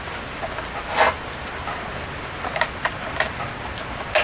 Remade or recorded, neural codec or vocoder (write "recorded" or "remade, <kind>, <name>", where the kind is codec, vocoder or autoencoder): recorded